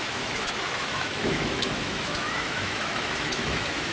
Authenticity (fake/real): fake